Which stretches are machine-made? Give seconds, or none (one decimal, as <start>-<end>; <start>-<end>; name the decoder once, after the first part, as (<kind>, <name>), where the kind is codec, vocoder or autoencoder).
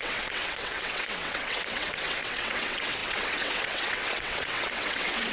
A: 0.0-5.3 (vocoder, WaveNeXt)